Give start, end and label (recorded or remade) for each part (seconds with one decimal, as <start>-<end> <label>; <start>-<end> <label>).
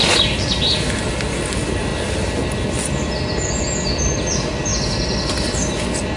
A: 0.0-1.9 remade; 1.9-3.6 recorded; 3.6-4.7 remade; 4.7-5.7 recorded; 5.7-6.2 remade